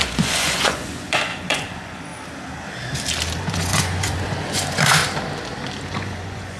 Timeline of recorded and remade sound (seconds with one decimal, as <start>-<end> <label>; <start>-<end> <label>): 0.0-2.1 remade; 2.1-3.4 recorded; 3.4-5.0 remade; 5.0-5.9 recorded; 5.9-6.6 remade

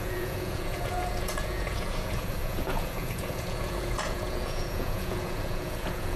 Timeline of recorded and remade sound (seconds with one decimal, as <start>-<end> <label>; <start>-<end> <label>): 0.0-6.2 remade

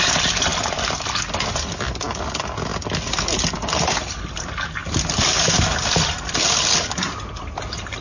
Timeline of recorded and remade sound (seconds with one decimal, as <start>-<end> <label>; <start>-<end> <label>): 0.0-8.0 recorded

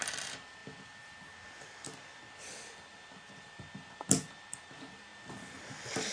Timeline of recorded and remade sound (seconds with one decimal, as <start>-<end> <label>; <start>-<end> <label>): 0.0-6.1 recorded

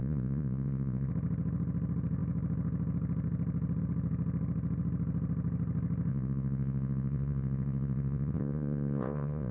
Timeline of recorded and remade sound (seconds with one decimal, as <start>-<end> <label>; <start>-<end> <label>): 0.0-1.1 remade; 1.1-6.1 recorded; 6.1-9.5 remade

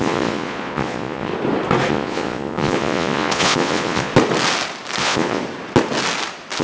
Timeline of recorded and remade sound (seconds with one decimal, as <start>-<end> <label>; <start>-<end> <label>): 0.0-1.3 remade; 1.3-1.9 recorded; 1.9-4.1 remade; 4.1-5.0 recorded; 5.0-5.4 remade; 5.4-6.6 recorded

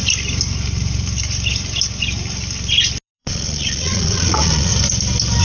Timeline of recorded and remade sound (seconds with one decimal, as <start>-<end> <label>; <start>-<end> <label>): 0.0-3.2 recorded; 3.2-4.7 remade; 4.7-5.4 recorded